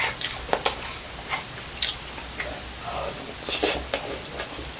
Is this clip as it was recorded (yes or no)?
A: yes